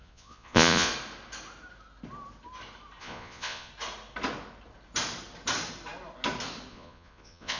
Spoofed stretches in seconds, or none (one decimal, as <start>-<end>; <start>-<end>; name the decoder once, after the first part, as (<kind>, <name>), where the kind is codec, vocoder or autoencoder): 0.0-0.9 (vocoder, Vocos); 3.0-3.7; 6.7-7.6